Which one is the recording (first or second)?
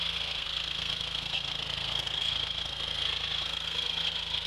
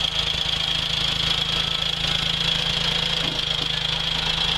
second